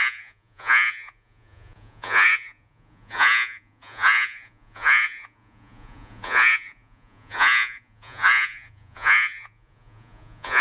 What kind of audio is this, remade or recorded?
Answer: remade